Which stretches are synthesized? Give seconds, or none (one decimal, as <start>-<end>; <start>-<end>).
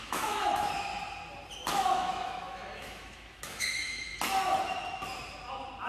0.0-0.9; 1.7-4.1